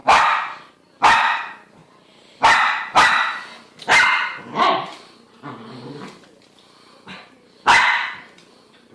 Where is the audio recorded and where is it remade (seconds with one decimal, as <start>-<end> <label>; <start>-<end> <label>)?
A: 0.0-8.9 recorded